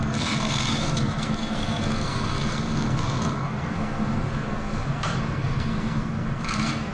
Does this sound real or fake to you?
fake